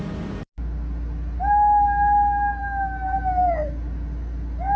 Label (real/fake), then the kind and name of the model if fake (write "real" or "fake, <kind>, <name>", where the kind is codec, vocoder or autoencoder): real